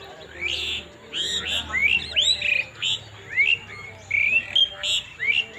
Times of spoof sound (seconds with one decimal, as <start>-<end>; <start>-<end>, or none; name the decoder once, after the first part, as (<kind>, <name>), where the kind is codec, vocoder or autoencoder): none

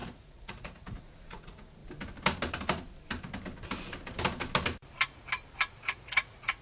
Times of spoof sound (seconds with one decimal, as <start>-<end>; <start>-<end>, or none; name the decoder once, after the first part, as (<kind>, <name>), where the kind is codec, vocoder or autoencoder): 0.0-1.8 (vocoder, Vocos); 5.8-6.6

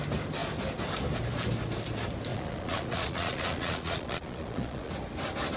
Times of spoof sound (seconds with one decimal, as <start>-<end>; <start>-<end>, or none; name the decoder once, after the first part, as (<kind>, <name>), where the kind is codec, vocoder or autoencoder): 2.3-4.9 (vocoder, Vocos)

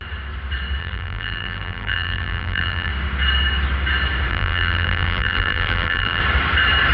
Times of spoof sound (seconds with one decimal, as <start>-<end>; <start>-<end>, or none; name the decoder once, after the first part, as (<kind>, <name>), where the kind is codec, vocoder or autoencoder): 0.8-2.9 (vocoder, BigVGAN v2); 4.3-6.2

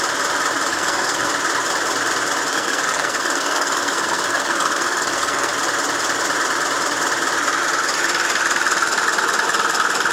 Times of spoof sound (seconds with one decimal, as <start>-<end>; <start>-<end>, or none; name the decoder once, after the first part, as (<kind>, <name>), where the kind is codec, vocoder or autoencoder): 0.7-1.3 (codec, SNAC); 2.5-5.5

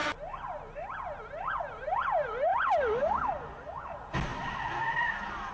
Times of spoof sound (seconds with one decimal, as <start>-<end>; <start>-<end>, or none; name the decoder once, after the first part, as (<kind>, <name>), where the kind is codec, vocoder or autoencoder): none